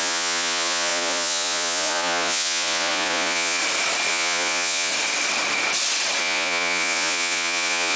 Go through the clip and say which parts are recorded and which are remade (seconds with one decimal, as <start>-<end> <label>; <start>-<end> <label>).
0.0-3.6 remade; 3.6-4.1 recorded; 4.1-4.9 remade; 4.9-6.2 recorded; 6.2-8.0 remade